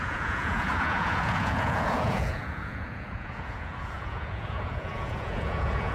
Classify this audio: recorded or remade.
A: remade